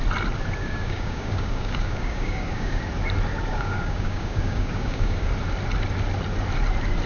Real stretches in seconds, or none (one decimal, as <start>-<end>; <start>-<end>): 0.0-0.6; 2.8-3.5; 5.3-7.1